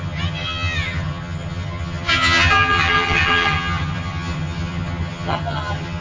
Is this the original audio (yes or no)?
no